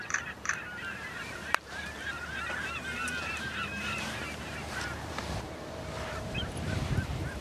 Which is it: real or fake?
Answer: fake